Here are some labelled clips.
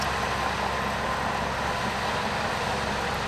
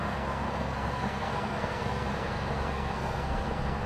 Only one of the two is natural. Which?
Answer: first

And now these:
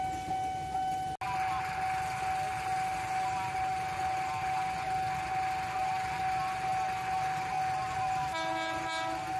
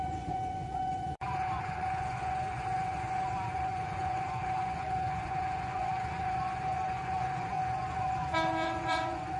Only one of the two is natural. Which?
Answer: first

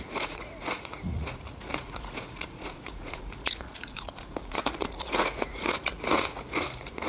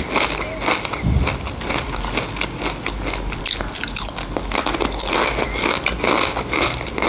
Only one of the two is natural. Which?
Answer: second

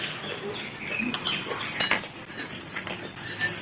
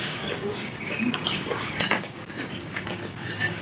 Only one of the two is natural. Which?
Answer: first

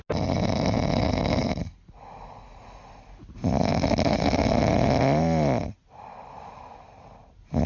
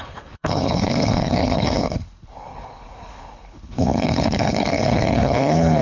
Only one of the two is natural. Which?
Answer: first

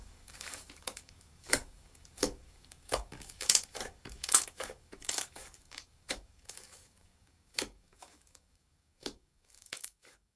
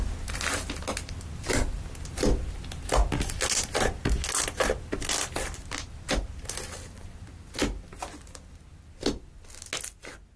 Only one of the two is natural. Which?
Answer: second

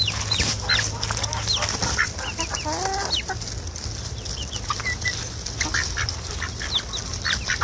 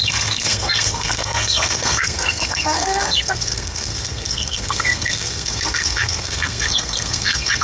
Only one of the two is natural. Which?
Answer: first